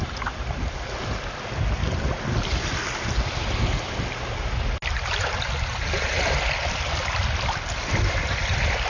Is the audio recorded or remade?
recorded